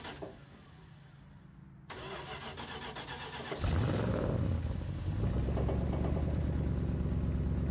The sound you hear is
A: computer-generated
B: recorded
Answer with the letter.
B